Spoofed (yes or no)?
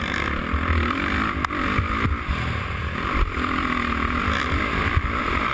yes